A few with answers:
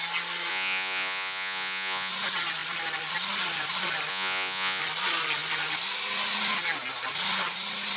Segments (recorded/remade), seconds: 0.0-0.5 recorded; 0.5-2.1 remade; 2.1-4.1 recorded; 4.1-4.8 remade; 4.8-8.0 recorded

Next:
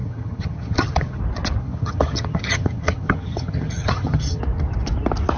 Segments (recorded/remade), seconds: 0.0-1.2 remade; 1.2-1.6 recorded; 1.6-4.4 remade; 4.4-5.4 recorded

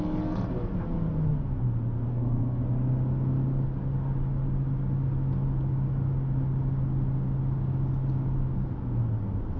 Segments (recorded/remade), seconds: 0.0-2.1 recorded; 2.1-2.6 remade; 2.6-9.6 recorded

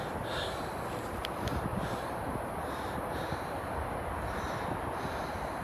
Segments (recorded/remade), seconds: 0.0-5.6 recorded

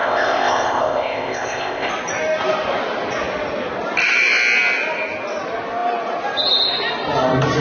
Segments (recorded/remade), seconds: 0.0-1.9 remade; 1.9-7.6 recorded

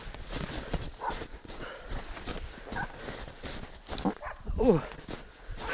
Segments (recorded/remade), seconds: 0.0-2.3 remade; 2.3-4.1 recorded; 4.1-5.7 remade

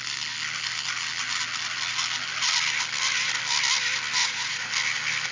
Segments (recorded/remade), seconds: 0.0-4.2 recorded; 4.2-4.7 remade; 4.7-5.3 recorded

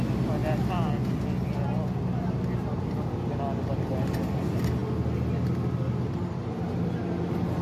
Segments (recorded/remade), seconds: 0.0-7.6 recorded